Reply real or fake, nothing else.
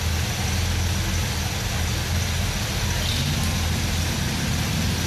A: real